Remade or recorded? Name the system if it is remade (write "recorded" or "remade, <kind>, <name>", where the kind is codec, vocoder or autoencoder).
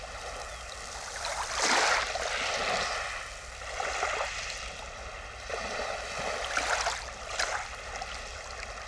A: recorded